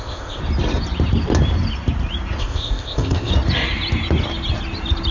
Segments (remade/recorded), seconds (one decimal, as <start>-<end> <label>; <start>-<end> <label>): 0.0-0.4 remade; 0.4-2.4 recorded; 2.4-3.3 remade; 3.3-5.1 recorded